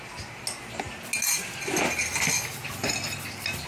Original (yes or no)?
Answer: yes